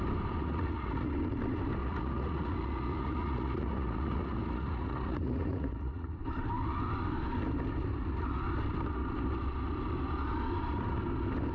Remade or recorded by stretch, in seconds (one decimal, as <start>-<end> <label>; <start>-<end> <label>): 0.0-0.4 recorded; 0.4-1.1 remade; 1.1-1.8 recorded; 1.8-6.2 remade; 6.2-11.5 recorded